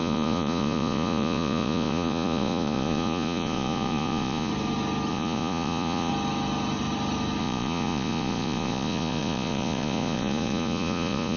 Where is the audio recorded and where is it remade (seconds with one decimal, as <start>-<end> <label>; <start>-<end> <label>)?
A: 0.0-4.5 remade; 4.5-5.1 recorded; 5.1-6.1 remade; 6.1-7.4 recorded; 7.4-11.4 remade